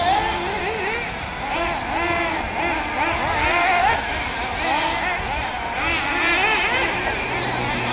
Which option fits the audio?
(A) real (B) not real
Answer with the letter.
A